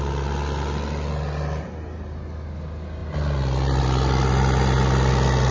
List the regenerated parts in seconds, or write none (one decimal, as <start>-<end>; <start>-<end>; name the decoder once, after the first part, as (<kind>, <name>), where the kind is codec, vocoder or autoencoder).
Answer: none